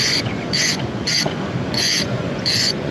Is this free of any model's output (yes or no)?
no